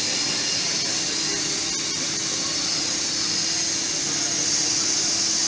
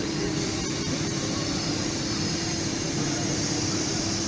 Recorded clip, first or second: first